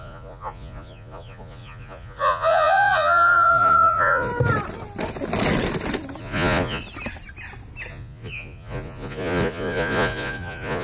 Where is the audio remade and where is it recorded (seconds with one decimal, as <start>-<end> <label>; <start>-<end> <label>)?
0.0-4.3 remade; 4.3-6.2 recorded; 6.2-6.8 remade; 6.8-7.9 recorded; 7.9-10.8 remade